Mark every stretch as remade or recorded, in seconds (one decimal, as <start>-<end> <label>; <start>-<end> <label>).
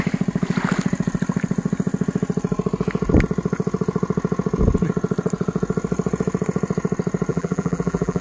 0.0-7.3 recorded; 7.3-8.2 remade